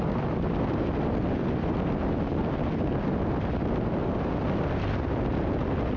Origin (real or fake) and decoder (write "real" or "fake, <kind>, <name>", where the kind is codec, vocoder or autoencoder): real